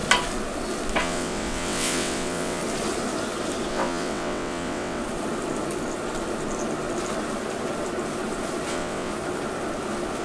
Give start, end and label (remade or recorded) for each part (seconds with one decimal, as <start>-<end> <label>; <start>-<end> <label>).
0.0-1.0 recorded; 1.0-2.6 remade; 2.6-3.7 recorded; 3.7-5.0 remade; 5.0-8.7 recorded; 8.7-9.1 remade; 9.1-10.2 recorded

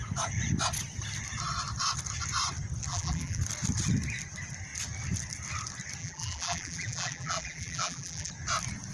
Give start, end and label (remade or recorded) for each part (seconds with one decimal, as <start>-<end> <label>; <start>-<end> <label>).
0.0-2.9 recorded; 2.9-3.4 remade; 3.4-6.0 recorded; 6.0-8.3 remade; 8.3-8.9 recorded

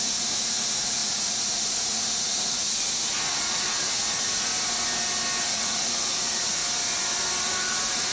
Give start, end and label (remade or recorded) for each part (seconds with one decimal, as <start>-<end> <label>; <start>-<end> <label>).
0.0-4.5 remade; 4.5-5.4 recorded; 5.4-6.6 remade; 6.6-7.4 recorded; 7.4-8.1 remade